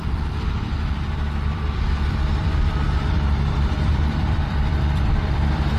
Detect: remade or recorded remade